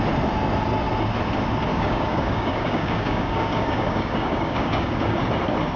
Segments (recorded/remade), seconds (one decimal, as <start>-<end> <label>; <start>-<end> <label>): 0.0-1.7 recorded; 1.7-5.2 remade; 5.2-5.8 recorded